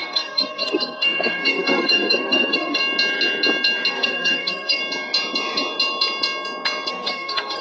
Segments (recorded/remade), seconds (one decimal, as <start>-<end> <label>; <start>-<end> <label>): 0.0-2.8 remade; 2.8-3.9 recorded; 3.9-4.8 remade; 4.8-6.9 recorded; 6.9-7.6 remade